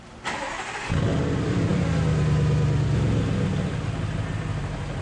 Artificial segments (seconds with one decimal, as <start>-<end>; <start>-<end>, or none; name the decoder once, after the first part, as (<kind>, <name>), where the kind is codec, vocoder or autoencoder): none